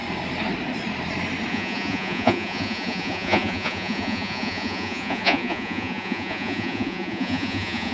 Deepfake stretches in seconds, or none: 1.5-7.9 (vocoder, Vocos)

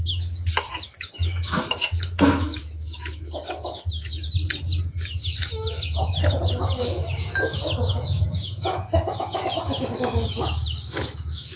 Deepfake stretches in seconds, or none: 0.0-4.2 (autoencoder, DAC-VAE); 4.9-11.6